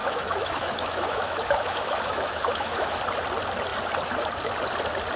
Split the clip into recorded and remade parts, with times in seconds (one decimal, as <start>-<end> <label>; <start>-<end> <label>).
0.0-3.0 remade; 3.0-5.2 recorded